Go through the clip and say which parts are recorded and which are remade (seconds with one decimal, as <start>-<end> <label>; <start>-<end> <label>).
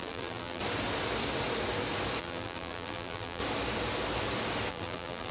0.0-0.6 remade; 0.6-2.2 recorded; 2.2-3.4 remade; 3.4-4.7 recorded; 4.7-5.3 remade